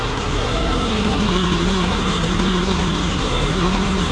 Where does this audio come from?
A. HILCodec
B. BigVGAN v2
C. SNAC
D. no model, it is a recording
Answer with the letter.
C